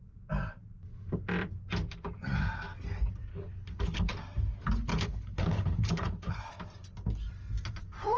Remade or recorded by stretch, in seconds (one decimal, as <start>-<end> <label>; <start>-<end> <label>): 0.0-3.3 recorded; 3.3-4.1 remade; 4.1-4.9 recorded; 4.9-6.4 remade; 6.4-8.2 recorded